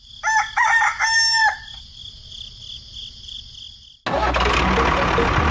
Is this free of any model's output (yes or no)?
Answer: yes